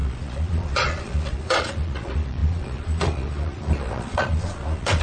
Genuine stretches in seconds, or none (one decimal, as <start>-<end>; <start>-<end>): none